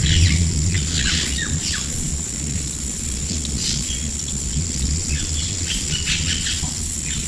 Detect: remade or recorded remade